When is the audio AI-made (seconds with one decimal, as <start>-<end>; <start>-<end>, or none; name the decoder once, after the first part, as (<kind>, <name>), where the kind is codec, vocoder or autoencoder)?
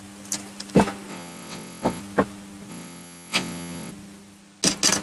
1.1-2.0 (vocoder, WaveNeXt); 2.7-3.9